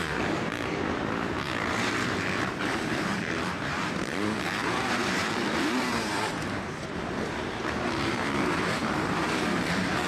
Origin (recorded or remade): remade